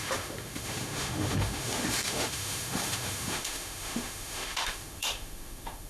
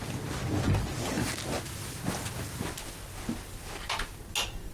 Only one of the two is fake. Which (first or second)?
first